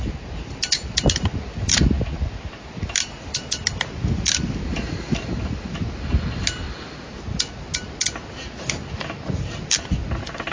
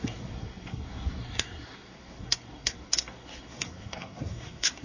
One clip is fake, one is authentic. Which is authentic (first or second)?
first